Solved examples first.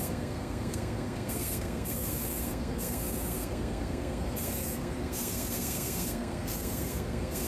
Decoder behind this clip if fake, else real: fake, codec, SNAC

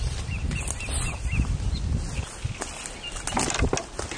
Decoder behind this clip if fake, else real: real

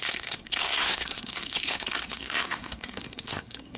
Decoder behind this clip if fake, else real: fake, codec, SNAC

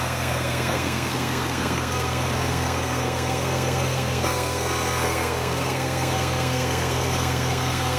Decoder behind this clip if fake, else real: fake, codec, SNAC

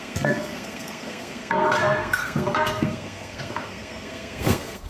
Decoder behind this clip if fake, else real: fake, codec, SNAC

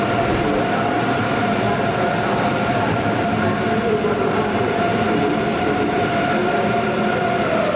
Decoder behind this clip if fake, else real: real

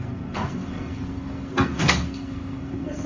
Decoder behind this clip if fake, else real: fake, codec, SNAC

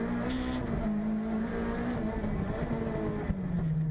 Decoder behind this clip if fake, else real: real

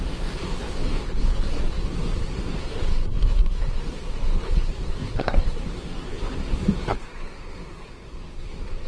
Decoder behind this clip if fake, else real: fake, codec, SNAC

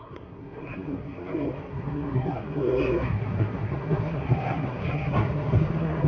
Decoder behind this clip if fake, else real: fake, codec, SNAC